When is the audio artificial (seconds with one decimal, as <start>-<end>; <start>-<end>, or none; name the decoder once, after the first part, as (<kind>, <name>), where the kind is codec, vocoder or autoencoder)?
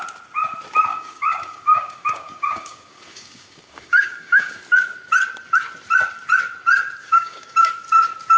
0.9-4.6 (codec, DAC); 7.0-7.7